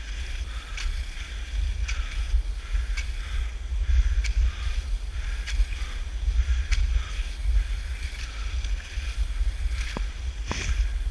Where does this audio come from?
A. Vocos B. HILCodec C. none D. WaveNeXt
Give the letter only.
C